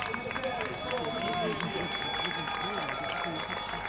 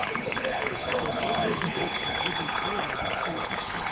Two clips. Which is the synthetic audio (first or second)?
second